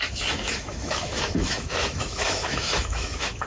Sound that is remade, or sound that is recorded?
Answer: remade